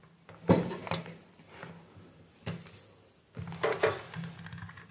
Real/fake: real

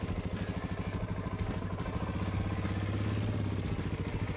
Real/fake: real